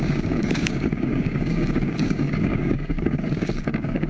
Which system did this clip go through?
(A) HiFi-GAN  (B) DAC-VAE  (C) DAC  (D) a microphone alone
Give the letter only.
C